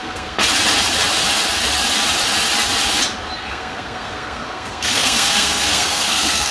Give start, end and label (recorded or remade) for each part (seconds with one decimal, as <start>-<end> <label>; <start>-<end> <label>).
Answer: 0.0-0.4 remade; 0.4-3.4 recorded; 3.4-6.5 remade